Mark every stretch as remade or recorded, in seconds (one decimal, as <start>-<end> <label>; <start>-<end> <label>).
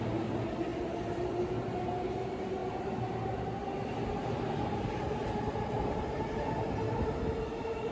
0.0-7.9 recorded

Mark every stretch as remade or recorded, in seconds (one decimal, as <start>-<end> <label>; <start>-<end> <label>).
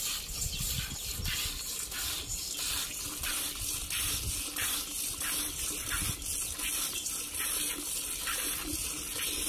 0.0-9.5 recorded